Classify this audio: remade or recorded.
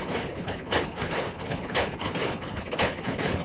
remade